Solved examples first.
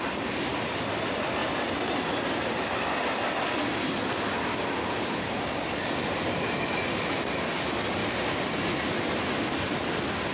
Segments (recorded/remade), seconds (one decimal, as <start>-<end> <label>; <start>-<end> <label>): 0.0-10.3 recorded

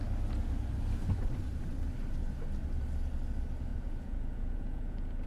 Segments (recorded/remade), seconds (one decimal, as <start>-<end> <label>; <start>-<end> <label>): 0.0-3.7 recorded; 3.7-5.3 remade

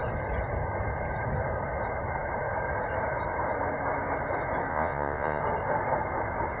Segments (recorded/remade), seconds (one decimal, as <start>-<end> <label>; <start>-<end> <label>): 0.0-4.7 recorded; 4.7-5.4 remade; 5.4-6.6 recorded

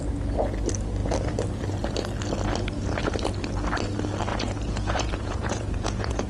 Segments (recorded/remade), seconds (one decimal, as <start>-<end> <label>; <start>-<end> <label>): 0.0-4.3 recorded; 4.3-6.3 remade

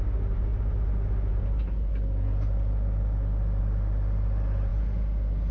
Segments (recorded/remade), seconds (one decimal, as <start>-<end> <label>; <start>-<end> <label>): 0.0-5.5 recorded

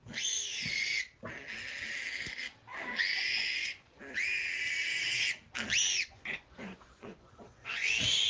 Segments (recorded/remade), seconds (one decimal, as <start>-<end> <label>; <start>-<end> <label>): 0.0-3.1 recorded; 3.1-4.0 remade; 4.0-6.0 recorded; 6.0-7.9 remade; 7.9-8.3 recorded

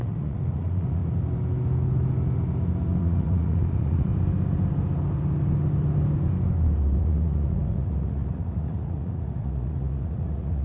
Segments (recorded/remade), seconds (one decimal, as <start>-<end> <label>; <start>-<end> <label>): 0.0-1.0 remade; 1.0-3.0 recorded; 3.0-4.1 remade; 4.1-7.0 recorded; 7.0-10.6 remade

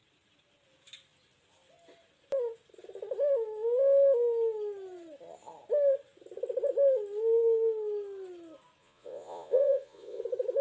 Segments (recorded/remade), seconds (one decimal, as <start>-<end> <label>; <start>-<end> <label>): 0.0-8.8 recorded; 8.8-10.2 remade; 10.2-10.6 recorded